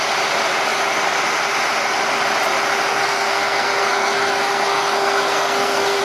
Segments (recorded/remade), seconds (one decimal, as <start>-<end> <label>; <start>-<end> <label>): 0.0-2.9 recorded; 2.9-6.0 remade